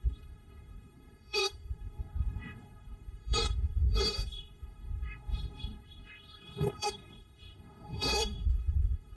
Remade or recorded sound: remade